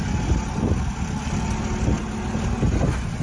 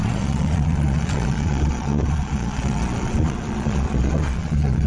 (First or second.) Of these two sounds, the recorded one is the first